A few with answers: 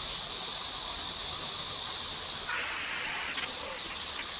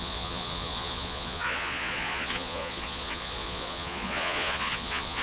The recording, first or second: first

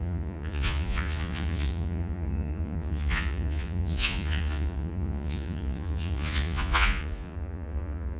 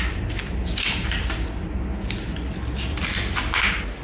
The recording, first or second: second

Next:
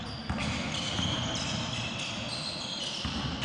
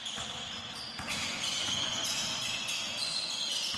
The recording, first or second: first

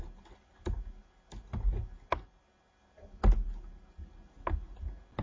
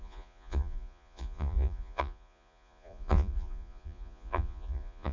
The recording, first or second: first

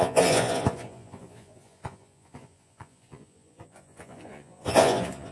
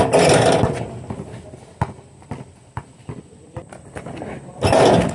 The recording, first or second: second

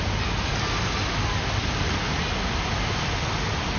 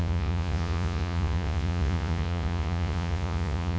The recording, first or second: first